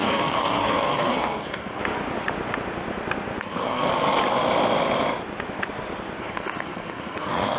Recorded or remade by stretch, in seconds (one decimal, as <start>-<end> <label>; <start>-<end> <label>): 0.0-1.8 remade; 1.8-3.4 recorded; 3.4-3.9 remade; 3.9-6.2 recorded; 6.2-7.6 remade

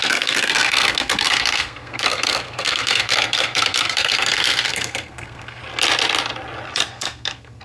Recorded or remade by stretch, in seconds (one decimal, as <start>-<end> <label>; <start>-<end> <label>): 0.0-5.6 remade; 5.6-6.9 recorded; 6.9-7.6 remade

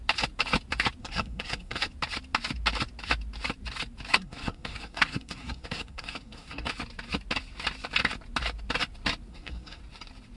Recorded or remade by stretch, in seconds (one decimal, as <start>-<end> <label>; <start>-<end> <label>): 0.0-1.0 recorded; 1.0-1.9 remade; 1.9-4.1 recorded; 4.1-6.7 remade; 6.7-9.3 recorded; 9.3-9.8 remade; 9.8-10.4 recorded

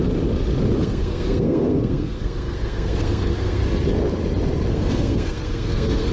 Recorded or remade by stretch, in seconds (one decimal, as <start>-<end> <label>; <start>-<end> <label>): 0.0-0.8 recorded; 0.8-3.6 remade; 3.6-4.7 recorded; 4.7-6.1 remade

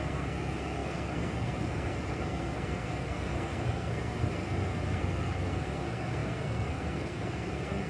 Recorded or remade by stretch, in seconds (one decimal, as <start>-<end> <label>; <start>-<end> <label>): 0.0-7.9 remade

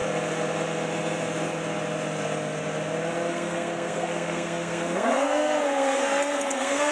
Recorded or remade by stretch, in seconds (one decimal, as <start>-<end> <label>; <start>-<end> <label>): 0.0-3.3 recorded; 3.3-6.9 remade

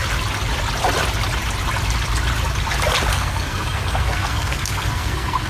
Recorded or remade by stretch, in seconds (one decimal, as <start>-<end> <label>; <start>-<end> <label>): 0.0-3.1 recorded; 3.1-5.5 remade

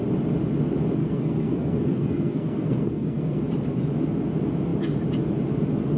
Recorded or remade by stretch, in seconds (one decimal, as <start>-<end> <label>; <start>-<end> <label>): 0.0-1.0 recorded; 1.0-3.4 remade; 3.4-6.0 recorded